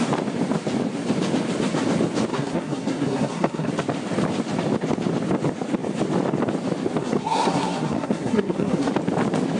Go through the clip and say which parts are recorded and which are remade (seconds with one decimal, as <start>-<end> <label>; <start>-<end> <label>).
0.0-2.3 recorded; 2.3-3.7 remade; 3.7-7.0 recorded; 7.0-8.9 remade; 8.9-9.6 recorded